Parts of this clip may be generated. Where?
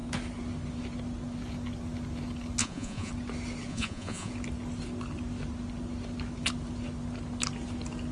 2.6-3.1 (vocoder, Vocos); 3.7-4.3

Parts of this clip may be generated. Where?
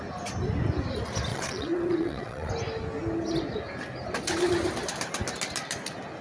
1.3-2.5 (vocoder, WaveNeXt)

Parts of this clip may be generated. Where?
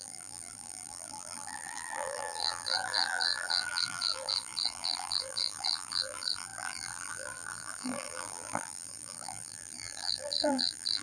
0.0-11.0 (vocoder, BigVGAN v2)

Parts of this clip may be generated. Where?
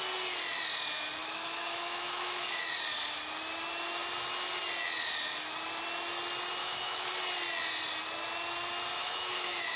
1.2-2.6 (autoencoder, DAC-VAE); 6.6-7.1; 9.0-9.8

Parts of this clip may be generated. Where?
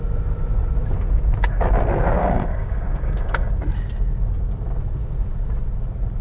2.2-3.5 (codec, DAC)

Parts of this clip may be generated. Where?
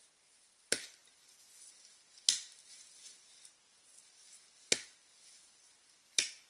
none